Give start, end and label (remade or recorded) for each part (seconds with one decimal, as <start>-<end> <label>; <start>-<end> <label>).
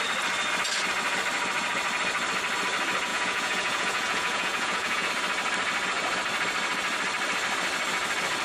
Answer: 0.0-3.1 recorded; 3.1-5.1 remade; 5.1-8.4 recorded